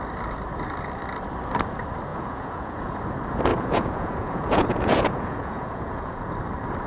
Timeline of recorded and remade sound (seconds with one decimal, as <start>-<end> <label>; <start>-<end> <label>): 0.0-2.1 recorded; 2.1-3.0 remade; 3.0-3.5 recorded; 3.5-6.3 remade; 6.3-6.9 recorded